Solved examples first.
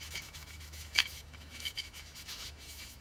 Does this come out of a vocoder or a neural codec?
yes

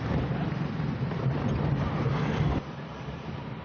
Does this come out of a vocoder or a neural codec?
no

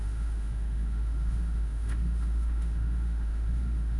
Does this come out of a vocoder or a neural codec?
yes